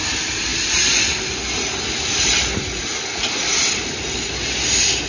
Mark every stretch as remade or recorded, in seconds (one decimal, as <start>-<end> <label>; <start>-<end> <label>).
0.0-5.1 recorded